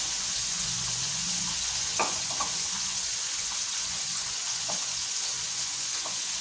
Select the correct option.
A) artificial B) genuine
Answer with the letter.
A